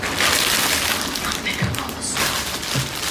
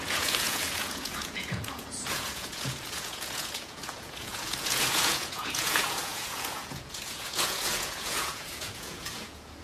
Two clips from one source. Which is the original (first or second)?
first